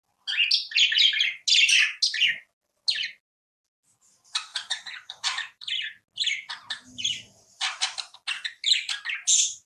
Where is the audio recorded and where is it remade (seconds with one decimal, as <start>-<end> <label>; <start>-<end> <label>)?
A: 0.0-4.5 recorded; 4.5-5.7 remade; 5.7-9.7 recorded